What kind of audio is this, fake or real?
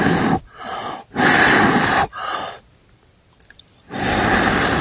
real